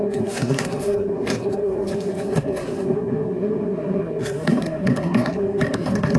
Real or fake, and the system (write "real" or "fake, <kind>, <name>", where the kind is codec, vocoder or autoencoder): fake, codec, SNAC